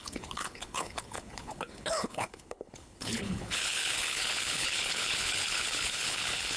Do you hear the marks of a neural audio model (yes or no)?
yes